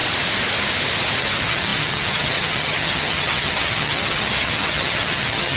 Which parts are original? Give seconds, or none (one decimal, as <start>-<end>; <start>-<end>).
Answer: 0.0-1.2